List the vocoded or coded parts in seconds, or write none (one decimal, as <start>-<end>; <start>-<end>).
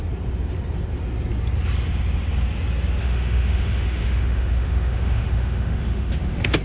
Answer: 3.0-6.6